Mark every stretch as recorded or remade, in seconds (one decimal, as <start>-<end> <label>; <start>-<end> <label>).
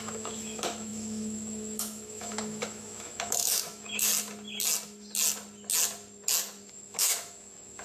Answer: 0.0-4.1 remade; 4.1-6.7 recorded; 6.7-7.8 remade